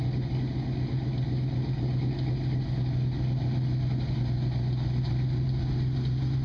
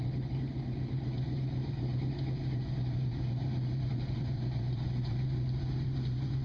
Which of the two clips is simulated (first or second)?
second